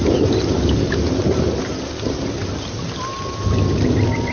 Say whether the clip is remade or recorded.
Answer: recorded